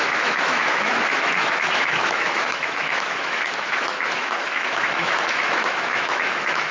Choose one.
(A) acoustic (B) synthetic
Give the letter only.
B